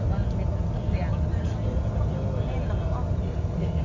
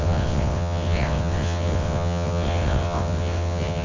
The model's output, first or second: second